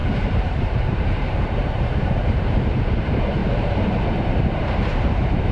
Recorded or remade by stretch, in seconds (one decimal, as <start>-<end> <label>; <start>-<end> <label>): 0.0-5.5 remade